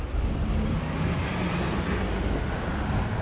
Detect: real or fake real